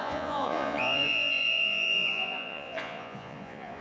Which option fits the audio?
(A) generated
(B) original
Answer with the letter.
A